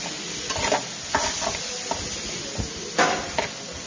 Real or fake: real